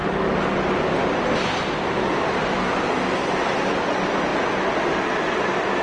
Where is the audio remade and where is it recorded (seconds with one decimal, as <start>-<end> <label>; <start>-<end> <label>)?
0.0-5.8 recorded